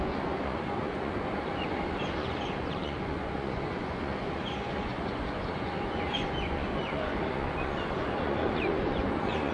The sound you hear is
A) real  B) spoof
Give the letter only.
B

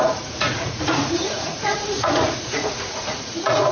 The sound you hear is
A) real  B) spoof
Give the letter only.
B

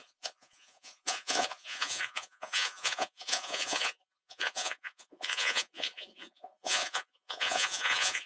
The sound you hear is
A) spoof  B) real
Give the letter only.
A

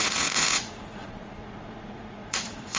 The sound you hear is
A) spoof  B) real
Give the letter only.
A